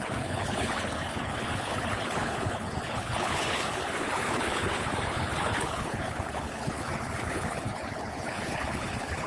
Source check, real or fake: fake